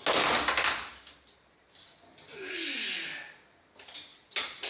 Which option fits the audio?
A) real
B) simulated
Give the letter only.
A